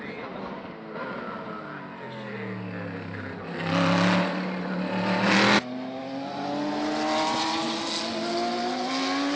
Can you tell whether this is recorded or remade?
recorded